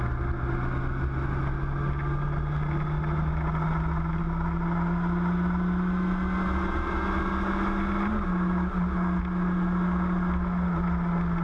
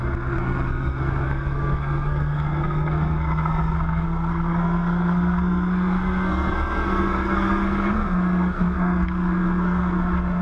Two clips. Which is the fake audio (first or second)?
second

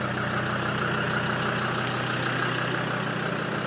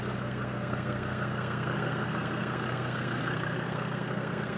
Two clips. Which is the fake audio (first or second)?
second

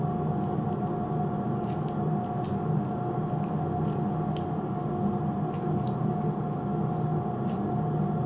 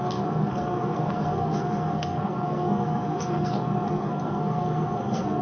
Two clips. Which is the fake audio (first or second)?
second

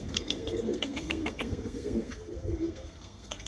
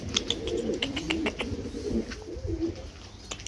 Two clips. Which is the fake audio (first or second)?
first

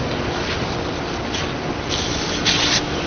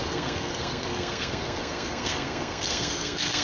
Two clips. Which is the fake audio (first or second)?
second